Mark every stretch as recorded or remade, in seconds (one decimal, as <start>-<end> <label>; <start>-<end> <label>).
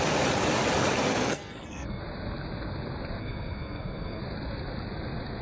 0.0-1.1 recorded; 1.1-2.0 remade; 2.0-3.2 recorded; 3.2-4.2 remade; 4.2-5.4 recorded